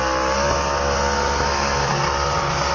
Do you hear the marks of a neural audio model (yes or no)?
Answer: no